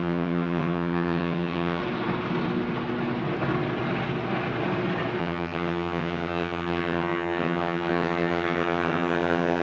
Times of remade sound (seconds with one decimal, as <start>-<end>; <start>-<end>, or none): 0.0-1.8; 5.2-9.6